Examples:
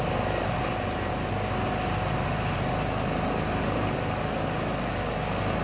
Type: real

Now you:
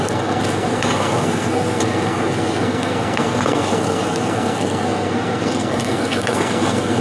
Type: fake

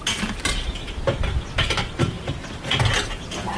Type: real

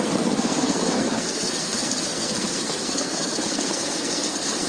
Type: fake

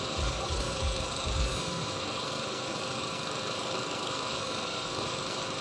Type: fake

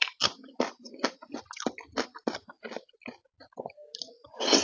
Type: real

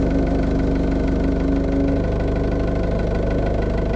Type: real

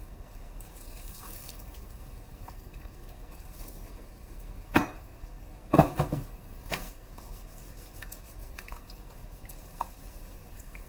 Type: fake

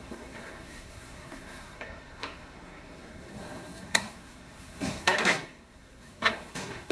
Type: fake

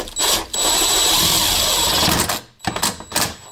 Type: real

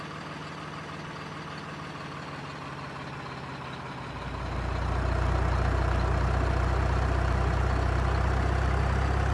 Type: real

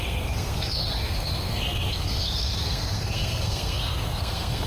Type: fake